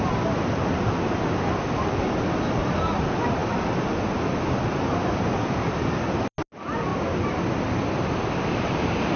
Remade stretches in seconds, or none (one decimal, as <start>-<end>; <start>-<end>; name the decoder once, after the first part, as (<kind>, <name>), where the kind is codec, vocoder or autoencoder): none